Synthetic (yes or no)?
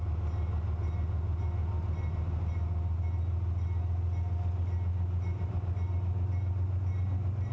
no